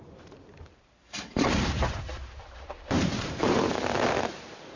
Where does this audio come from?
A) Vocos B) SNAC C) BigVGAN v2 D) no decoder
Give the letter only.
C